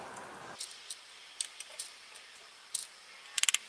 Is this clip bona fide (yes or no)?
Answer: yes